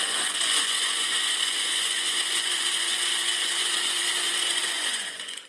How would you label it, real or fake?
fake